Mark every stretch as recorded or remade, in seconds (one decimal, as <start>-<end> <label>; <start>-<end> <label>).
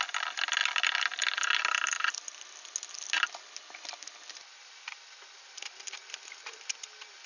0.0-7.3 recorded